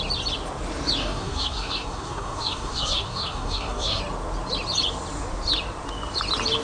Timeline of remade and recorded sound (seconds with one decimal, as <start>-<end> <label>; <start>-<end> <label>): 0.0-1.0 recorded; 1.0-4.0 remade; 4.0-6.6 recorded